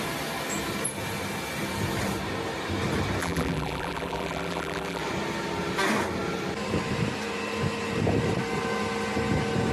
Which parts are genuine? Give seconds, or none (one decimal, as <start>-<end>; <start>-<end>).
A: 0.0-3.2; 5.0-9.7